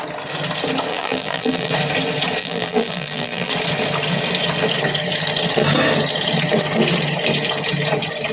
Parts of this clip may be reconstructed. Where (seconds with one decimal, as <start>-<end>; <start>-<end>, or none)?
0.9-1.7; 2.4-3.5